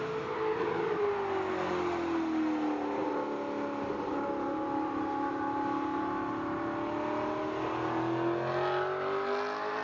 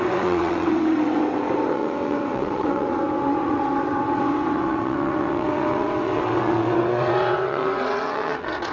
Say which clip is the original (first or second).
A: first